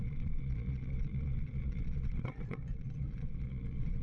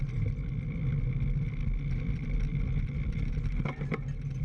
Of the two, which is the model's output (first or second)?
first